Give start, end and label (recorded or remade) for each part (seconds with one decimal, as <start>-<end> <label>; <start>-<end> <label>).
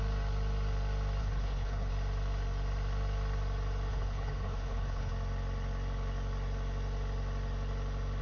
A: 0.0-1.2 recorded; 1.2-1.9 remade; 1.9-3.9 recorded; 3.9-5.1 remade; 5.1-8.2 recorded